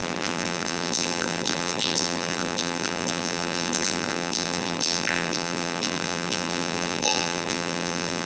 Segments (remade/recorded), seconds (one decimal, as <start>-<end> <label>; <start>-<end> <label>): 0.0-8.3 remade